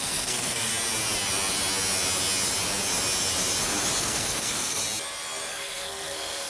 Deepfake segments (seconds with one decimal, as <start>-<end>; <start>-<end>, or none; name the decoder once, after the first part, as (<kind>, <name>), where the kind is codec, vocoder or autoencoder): 0.0-0.7 (codec, SNAC); 4.0-4.8; 5.5-6.5